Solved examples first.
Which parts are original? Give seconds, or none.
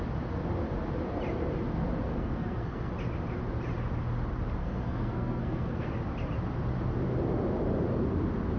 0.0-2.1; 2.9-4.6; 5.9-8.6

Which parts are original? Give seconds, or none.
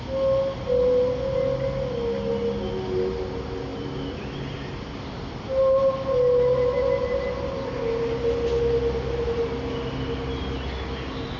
0.0-11.4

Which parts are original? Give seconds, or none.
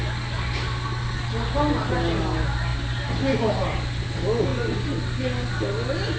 0.0-6.2